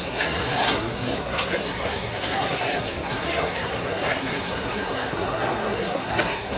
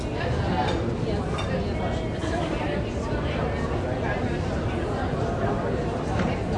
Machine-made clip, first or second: first